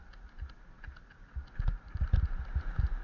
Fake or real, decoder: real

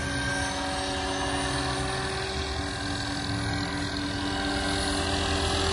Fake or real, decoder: real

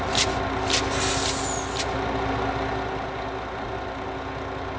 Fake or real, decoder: real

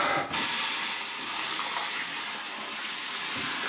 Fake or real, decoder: real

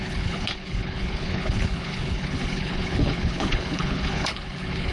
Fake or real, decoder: fake, codec, HILCodec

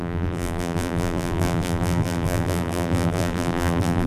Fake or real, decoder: fake, vocoder, BigVGAN v2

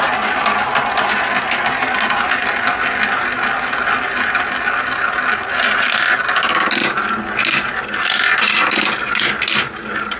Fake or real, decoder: real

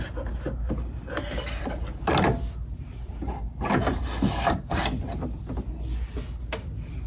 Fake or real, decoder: real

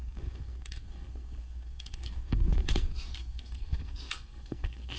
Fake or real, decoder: fake, codec, SNAC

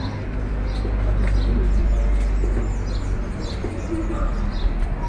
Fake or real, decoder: real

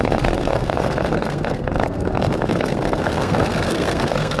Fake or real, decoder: fake, codec, SNAC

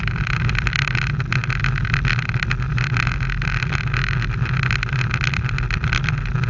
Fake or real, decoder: real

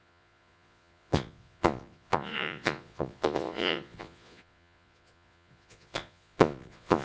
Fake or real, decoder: fake, vocoder, Vocos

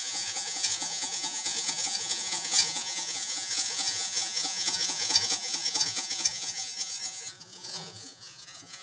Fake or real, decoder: fake, vocoder, Vocos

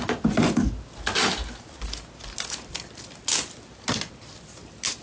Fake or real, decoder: real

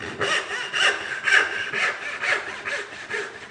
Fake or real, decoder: real